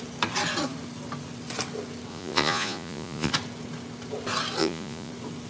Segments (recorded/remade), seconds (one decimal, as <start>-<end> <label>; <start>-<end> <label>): 0.0-2.1 recorded; 2.1-3.3 remade; 3.3-4.6 recorded; 4.6-5.1 remade; 5.1-5.5 recorded